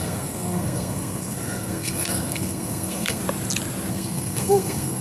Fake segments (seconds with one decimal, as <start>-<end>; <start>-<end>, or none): 0.0-3.2; 3.9-5.0